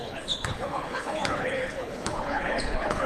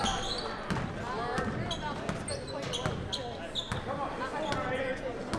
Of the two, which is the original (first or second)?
second